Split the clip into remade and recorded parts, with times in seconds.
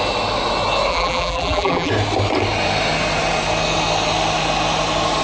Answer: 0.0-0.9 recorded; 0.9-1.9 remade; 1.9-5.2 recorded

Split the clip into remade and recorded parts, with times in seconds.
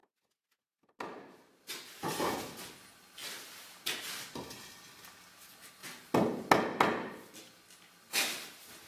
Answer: 0.0-8.9 recorded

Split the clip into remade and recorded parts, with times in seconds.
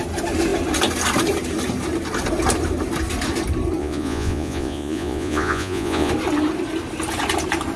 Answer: 0.0-3.8 recorded; 3.8-6.1 remade; 6.1-7.8 recorded